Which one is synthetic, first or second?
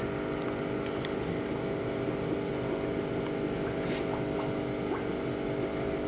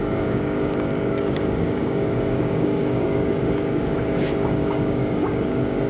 second